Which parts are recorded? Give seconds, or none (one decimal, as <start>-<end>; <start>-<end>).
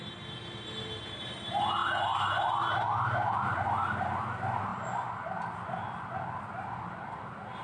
0.0-7.6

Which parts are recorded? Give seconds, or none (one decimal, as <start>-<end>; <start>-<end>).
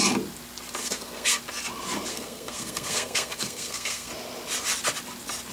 0.0-0.8; 1.4-2.1; 4.1-5.5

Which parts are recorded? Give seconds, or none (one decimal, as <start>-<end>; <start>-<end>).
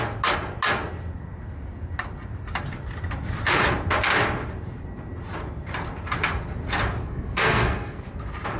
0.0-7.0; 8.0-8.6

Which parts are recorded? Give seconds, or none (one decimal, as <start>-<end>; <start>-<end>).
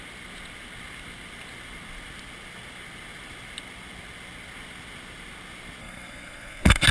0.0-5.8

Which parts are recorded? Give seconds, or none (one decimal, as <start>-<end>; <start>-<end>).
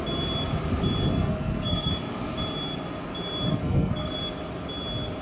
0.0-1.1; 1.9-3.5; 4.2-5.2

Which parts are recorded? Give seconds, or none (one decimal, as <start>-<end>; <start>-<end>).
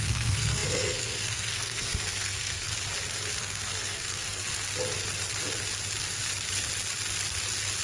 2.7-3.4; 4.5-7.8